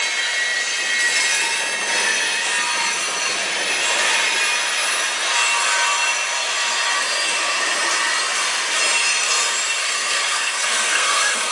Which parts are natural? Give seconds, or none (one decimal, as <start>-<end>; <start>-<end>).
0.0-9.8